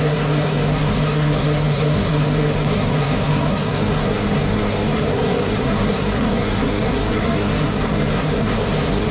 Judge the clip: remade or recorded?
remade